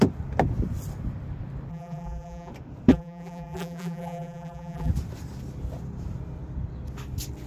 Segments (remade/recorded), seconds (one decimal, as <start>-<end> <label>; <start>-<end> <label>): 0.0-1.7 recorded; 1.7-2.5 remade; 2.5-2.9 recorded; 2.9-4.9 remade; 4.9-7.5 recorded